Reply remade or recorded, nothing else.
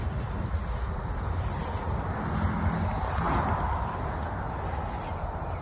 recorded